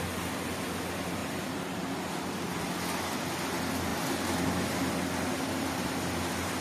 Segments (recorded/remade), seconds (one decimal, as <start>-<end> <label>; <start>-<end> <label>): 0.0-1.2 recorded; 1.2-2.6 remade; 2.6-5.3 recorded; 5.3-6.6 remade